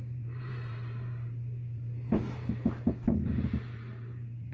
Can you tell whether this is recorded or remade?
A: remade